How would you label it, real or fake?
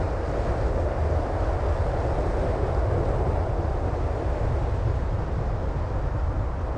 real